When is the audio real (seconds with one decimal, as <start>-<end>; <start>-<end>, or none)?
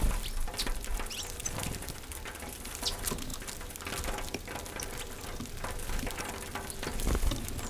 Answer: 0.0-7.7